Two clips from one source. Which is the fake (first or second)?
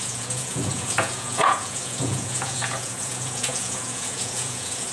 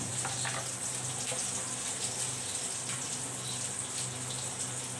first